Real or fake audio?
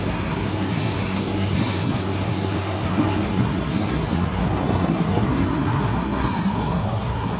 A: fake